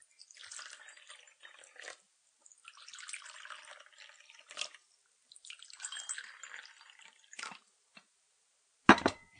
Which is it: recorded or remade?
recorded